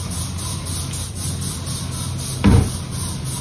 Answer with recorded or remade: recorded